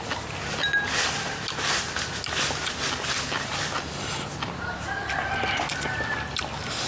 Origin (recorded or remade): recorded